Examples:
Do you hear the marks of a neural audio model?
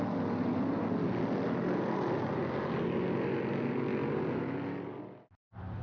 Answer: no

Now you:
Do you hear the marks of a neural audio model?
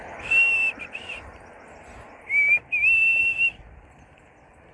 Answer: no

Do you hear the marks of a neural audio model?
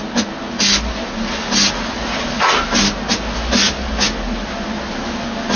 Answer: no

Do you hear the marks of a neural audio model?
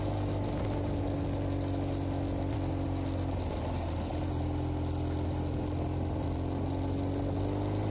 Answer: no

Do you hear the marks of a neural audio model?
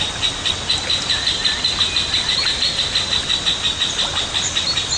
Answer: no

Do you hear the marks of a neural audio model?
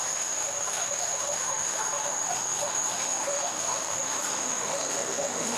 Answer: yes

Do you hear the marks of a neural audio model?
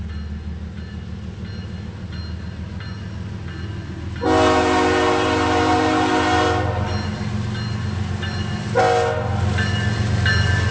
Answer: no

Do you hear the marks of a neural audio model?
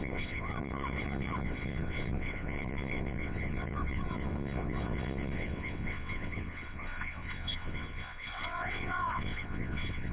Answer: yes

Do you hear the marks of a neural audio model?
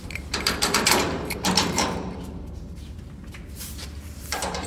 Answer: yes